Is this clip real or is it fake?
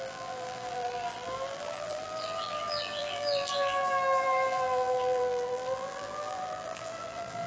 fake